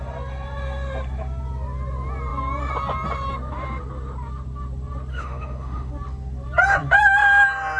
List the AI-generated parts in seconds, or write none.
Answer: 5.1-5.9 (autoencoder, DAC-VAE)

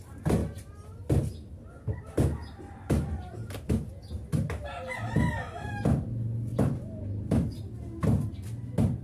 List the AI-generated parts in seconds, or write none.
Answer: none

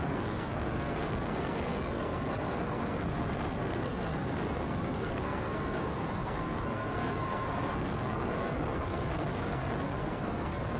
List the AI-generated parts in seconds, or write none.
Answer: 0.0-10.8 (codec, SNAC)